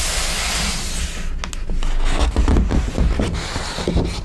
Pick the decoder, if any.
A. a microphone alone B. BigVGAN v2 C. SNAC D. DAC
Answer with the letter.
A